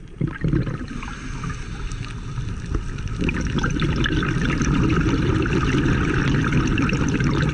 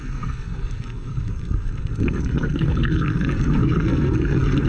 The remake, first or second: second